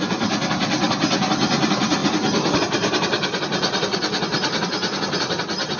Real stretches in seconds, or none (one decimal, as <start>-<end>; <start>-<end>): 0.0-5.8